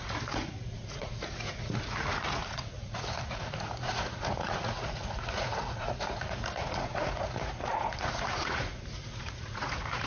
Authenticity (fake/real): fake